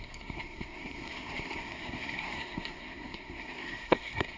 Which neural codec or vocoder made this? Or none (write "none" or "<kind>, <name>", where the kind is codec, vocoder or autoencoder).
codec, SNAC